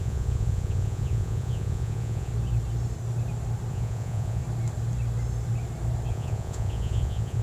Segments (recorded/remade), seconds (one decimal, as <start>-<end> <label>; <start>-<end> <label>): 0.0-2.3 remade; 2.3-3.7 recorded; 3.7-4.4 remade; 4.4-6.1 recorded; 6.1-7.4 remade